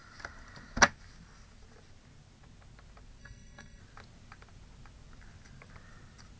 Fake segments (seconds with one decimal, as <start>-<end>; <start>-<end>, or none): 3.2-3.8